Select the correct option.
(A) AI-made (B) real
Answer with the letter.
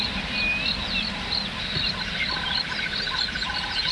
B